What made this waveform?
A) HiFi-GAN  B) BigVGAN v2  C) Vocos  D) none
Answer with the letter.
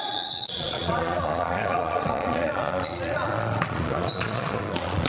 C